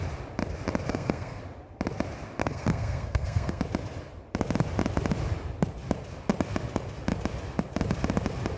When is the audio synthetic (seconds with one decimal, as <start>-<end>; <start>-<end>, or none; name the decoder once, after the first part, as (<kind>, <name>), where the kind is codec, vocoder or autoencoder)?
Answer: 0.9-1.4 (codec, SNAC); 2.4-3.6